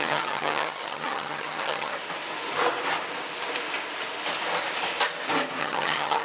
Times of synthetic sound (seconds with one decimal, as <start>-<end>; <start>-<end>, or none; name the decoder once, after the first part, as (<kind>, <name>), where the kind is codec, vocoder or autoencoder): 0.0-1.9 (vocoder, HiFi-GAN); 5.6-6.2